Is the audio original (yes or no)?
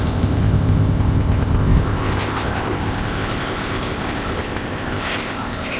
no